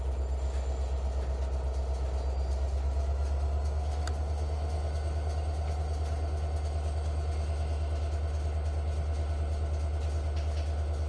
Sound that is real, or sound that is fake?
real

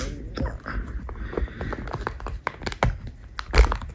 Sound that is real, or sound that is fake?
real